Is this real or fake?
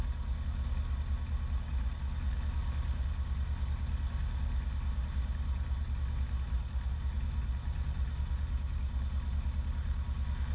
real